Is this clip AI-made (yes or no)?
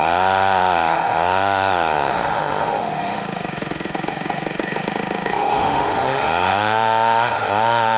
yes